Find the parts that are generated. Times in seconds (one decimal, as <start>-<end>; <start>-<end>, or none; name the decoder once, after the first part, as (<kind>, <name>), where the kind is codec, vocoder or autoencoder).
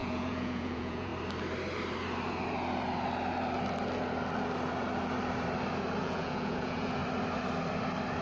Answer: 0.0-1.1 (vocoder, Vocos); 6.0-7.0